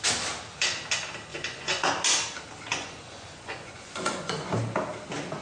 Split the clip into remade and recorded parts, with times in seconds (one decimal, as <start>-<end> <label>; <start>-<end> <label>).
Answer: 0.0-1.3 recorded; 1.3-1.9 remade; 1.9-2.7 recorded; 2.7-4.5 remade; 4.5-5.4 recorded